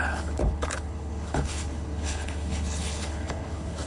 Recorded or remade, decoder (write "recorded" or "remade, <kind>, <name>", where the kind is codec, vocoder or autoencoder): remade, codec, HILCodec